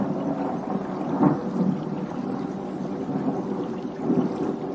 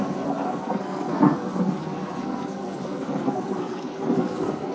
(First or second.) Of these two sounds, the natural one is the first